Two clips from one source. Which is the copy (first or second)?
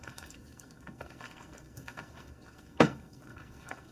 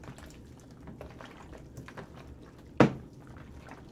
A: first